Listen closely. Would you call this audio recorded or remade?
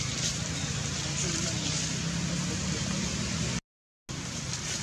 recorded